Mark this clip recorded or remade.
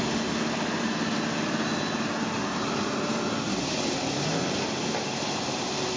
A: recorded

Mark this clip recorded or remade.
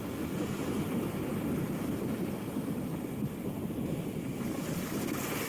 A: recorded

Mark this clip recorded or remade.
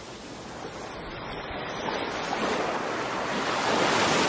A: recorded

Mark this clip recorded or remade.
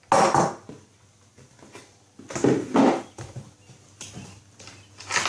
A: recorded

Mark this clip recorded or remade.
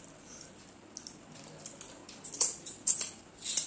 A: recorded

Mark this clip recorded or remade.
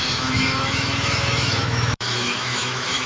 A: remade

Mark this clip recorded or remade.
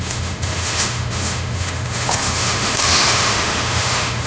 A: remade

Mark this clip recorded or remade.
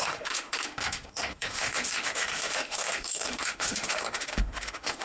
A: remade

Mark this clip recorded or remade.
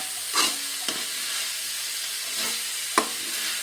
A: recorded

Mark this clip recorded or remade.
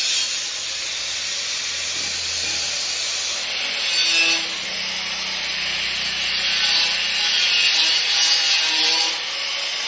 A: recorded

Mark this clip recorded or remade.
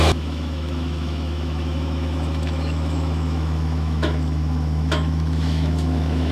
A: remade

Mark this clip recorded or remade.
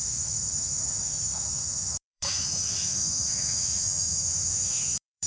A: remade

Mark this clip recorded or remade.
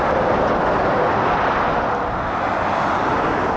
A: recorded